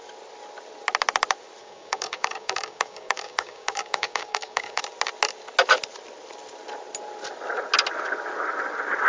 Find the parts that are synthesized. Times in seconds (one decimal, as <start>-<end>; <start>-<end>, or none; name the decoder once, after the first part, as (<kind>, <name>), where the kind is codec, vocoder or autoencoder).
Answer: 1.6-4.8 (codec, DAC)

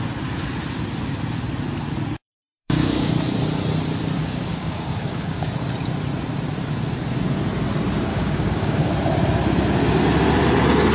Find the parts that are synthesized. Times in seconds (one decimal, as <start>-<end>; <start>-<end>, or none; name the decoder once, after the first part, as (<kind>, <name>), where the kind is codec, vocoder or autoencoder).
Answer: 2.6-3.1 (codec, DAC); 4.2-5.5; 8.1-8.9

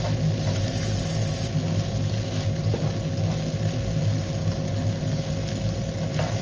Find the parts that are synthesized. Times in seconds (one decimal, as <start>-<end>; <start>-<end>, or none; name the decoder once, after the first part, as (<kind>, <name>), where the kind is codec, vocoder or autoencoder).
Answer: none

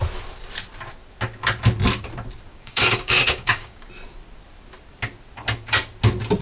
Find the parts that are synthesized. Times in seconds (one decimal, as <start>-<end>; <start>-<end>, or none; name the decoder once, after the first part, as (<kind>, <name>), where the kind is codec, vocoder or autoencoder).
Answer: 2.5-3.9 (codec, DAC)

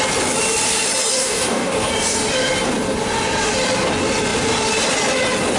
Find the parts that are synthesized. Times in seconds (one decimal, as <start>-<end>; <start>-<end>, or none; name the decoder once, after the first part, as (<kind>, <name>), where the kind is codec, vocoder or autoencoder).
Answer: 1.1-1.9 (codec, DAC)

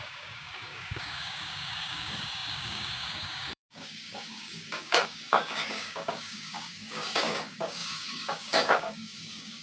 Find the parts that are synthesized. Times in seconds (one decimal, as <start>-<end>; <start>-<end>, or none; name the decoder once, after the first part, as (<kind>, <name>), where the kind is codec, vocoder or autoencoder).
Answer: 0.0-9.6 (codec, DAC)

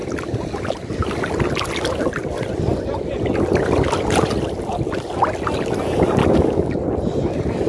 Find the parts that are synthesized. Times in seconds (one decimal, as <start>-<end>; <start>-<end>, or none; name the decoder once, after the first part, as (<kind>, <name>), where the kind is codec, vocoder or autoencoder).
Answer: 6.2-6.7 (codec, DAC)